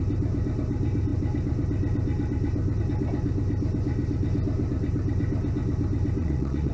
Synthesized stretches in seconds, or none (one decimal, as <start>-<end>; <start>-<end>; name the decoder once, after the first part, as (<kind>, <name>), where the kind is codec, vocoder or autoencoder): 6.2-6.7 (vocoder, Vocos)